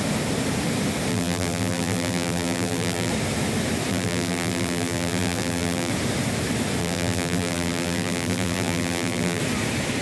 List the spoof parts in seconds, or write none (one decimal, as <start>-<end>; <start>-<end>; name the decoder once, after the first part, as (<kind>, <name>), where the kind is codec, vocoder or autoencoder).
1.1-3.1 (vocoder, BigVGAN v2); 3.9-5.9; 6.8-9.4